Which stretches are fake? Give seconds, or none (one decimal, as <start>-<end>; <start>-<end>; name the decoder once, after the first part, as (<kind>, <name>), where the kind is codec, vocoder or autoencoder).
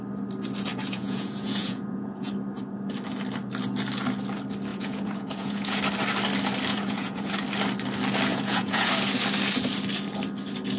0.7-2.3 (vocoder, Vocos); 4.7-5.8; 6.7-7.3; 8.3-8.9